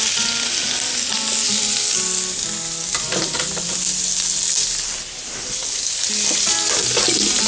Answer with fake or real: real